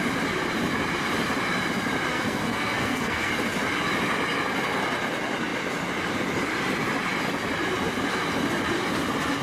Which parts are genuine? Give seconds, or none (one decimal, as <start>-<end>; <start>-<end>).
0.0-2.1; 3.3-9.4